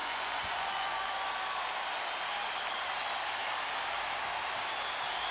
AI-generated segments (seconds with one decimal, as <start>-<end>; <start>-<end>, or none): 0.0-1.3